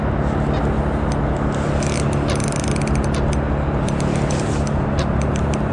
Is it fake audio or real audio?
real